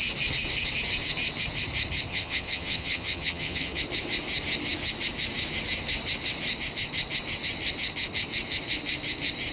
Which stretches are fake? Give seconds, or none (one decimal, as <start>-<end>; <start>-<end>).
2.1-3.8